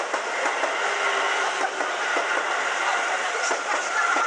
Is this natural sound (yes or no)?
yes